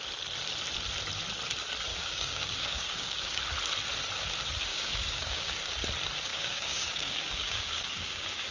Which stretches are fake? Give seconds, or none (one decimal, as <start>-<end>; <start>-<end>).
1.9-3.4; 4.7-5.6; 6.3-8.5